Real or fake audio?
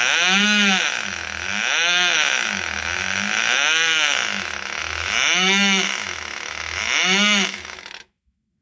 fake